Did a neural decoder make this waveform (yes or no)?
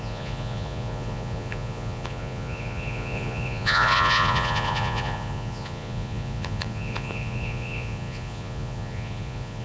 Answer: yes